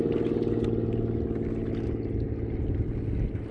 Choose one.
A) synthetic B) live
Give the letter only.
B